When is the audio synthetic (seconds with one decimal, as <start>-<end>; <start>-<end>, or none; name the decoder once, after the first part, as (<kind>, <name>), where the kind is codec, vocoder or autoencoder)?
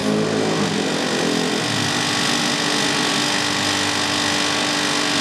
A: none